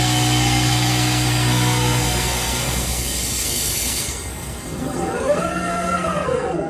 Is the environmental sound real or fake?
fake